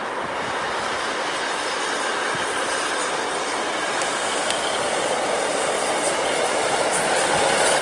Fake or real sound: real